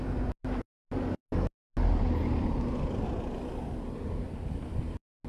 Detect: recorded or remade recorded